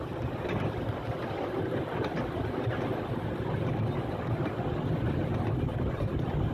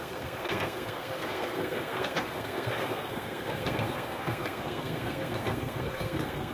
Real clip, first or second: first